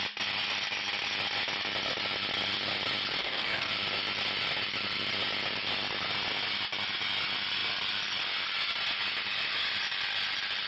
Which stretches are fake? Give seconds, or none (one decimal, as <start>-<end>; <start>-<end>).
3.2-3.7